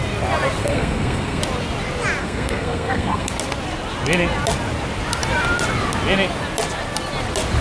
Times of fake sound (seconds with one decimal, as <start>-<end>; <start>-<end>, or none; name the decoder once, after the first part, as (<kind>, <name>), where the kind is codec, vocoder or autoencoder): 0.6-1.4 (codec, SNAC); 2.2-3.3